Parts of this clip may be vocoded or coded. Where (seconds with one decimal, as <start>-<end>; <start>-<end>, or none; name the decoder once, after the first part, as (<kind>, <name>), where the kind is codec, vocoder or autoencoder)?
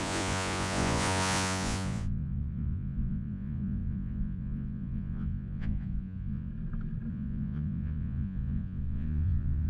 0.0-6.5 (vocoder, Vocos); 7.1-9.7